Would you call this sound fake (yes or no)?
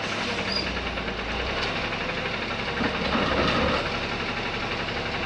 no